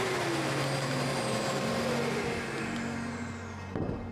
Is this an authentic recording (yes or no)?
yes